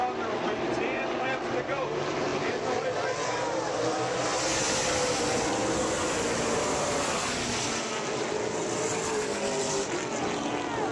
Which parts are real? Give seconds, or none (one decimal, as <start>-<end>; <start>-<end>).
0.0-10.9